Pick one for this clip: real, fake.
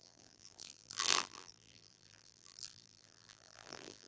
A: fake